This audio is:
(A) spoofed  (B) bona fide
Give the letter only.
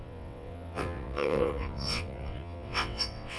A